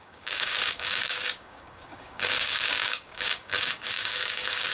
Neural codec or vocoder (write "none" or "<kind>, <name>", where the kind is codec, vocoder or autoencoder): codec, DAC